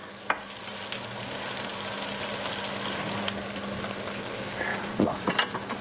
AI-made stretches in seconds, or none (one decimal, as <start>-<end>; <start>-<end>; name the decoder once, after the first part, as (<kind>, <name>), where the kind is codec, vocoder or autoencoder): 4.7-5.3 (vocoder, Vocos)